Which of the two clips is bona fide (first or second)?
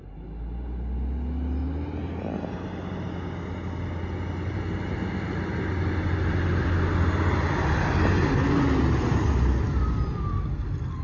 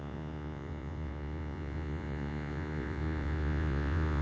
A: first